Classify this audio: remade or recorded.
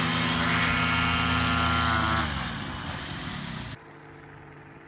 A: recorded